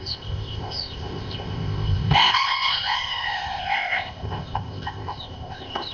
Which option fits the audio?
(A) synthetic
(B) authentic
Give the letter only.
A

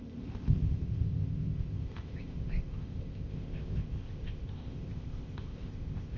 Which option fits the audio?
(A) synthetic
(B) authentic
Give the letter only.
A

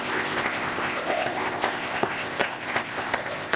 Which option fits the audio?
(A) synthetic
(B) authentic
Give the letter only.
A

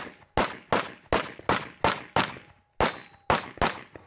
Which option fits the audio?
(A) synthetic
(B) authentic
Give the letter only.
B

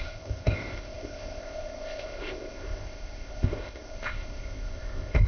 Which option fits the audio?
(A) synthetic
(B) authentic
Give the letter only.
A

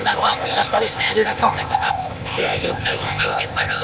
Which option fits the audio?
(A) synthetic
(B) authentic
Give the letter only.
A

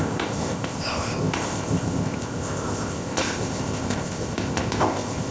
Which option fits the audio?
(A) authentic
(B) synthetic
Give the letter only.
B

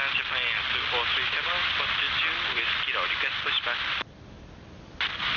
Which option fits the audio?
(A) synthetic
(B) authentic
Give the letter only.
B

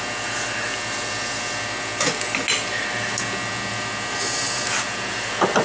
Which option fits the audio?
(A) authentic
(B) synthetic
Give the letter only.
A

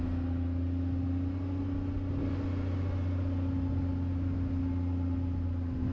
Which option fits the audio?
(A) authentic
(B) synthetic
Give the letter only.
A